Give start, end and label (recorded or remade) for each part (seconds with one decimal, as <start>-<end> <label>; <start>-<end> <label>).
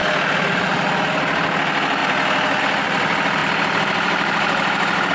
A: 0.0-2.0 recorded; 2.0-2.6 remade; 2.6-3.4 recorded; 3.4-5.1 remade